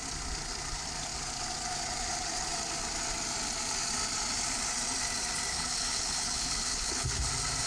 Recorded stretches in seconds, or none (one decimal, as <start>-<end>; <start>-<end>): 0.0-5.5; 7.3-7.7